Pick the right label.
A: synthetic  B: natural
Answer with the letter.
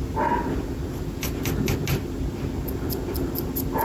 B